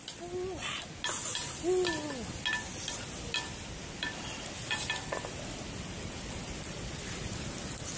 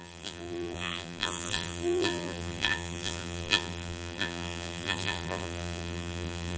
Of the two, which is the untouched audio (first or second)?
first